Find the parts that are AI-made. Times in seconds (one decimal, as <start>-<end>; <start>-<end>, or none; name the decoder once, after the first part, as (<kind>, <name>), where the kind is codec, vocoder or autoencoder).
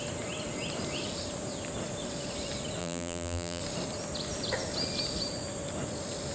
2.8-3.6 (vocoder, BigVGAN v2)